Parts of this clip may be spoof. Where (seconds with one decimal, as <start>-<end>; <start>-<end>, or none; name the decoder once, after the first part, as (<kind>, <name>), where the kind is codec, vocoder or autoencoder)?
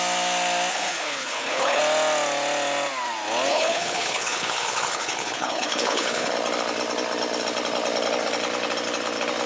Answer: 0.7-1.8 (codec, HILCodec); 3.5-6.3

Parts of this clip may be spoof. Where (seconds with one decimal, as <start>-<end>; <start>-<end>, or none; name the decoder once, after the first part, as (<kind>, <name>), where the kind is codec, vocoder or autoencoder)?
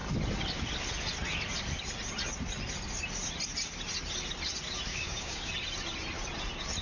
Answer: 4.9-5.5 (codec, DAC)